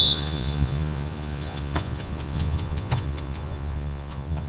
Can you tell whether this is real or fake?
fake